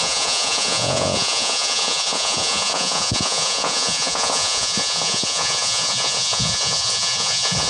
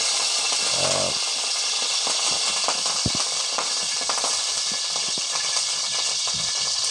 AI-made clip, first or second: first